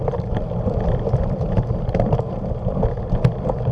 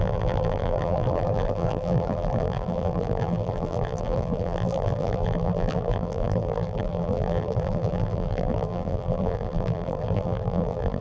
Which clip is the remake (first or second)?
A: second